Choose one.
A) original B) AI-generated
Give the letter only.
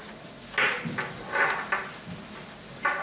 A